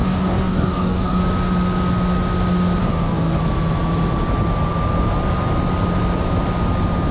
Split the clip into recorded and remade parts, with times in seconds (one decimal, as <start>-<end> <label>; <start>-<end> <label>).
0.0-1.2 remade; 1.2-2.8 recorded; 2.8-3.4 remade; 3.4-7.1 recorded